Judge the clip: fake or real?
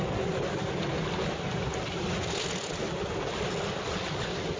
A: real